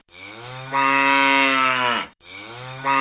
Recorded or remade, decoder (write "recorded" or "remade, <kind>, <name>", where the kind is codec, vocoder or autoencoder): remade, autoencoder, DAC-VAE